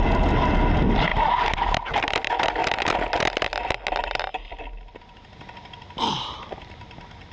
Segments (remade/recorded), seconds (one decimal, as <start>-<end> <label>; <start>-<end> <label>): 0.0-7.3 recorded